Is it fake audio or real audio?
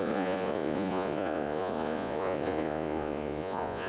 fake